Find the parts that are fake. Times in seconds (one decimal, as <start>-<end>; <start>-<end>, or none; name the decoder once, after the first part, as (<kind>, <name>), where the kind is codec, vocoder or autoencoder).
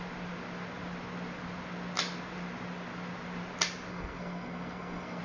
3.9-5.2 (codec, SNAC)